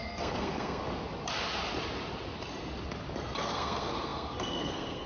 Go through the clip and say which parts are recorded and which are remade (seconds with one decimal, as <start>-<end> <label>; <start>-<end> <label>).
0.0-0.8 remade; 0.8-3.4 recorded; 3.4-5.1 remade